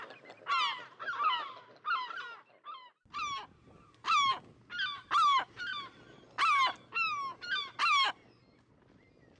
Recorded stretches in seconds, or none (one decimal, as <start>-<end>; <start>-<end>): 0.0-9.4